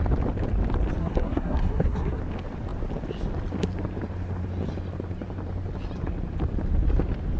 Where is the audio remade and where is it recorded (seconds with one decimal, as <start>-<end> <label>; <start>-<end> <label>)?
0.0-1.0 recorded; 1.0-2.2 remade; 2.2-7.4 recorded